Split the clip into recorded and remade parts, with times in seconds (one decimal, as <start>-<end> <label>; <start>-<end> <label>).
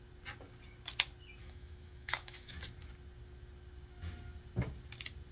0.0-1.4 recorded; 1.4-2.5 remade; 2.5-5.3 recorded